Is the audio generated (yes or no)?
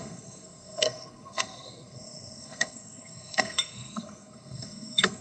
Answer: yes